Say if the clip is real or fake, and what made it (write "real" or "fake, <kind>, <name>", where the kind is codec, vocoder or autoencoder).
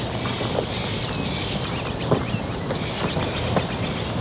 real